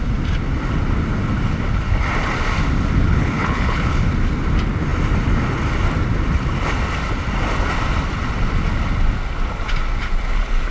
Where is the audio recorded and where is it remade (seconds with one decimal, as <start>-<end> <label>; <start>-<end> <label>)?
0.0-3.0 recorded; 3.0-4.1 remade; 4.1-10.7 recorded